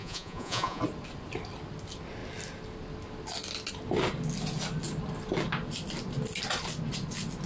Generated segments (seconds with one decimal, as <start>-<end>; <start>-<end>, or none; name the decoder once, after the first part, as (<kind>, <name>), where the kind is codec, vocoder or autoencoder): 0.0-0.8 (vocoder, Vocos)